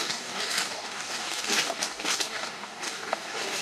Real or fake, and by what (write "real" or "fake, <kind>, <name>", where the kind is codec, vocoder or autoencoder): fake, codec, DAC